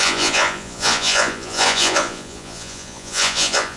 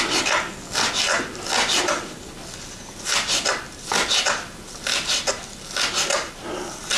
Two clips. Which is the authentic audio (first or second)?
second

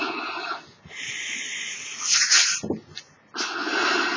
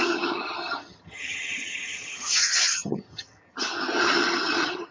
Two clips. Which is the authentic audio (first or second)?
first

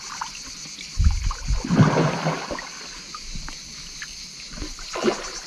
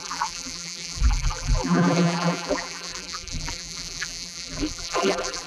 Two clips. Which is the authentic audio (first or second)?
first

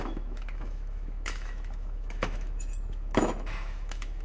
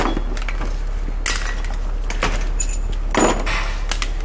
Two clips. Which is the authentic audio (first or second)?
second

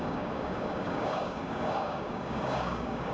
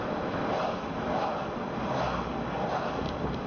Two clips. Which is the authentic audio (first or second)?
second